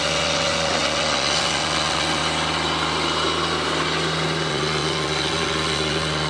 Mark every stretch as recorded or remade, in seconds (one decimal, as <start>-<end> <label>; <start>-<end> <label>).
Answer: 0.0-2.2 remade; 2.2-4.5 recorded; 4.5-6.3 remade